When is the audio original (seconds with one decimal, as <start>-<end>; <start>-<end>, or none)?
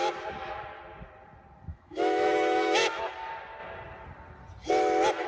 0.0-1.7; 3.0-5.3